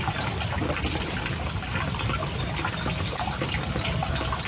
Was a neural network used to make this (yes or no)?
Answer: no